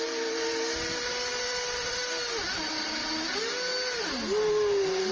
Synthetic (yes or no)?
no